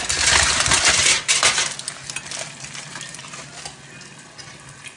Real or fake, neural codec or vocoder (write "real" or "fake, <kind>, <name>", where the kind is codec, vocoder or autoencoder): real